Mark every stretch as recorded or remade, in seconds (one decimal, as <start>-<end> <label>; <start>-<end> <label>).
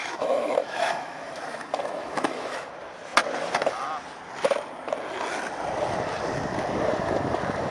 0.0-2.7 remade; 2.7-7.7 recorded